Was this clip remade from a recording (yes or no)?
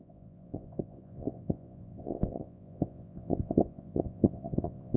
yes